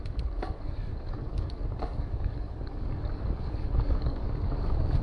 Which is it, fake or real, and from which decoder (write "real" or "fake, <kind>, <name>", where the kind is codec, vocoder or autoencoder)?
fake, codec, DAC